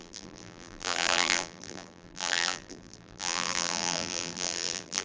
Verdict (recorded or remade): remade